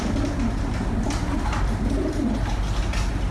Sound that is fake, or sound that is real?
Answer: real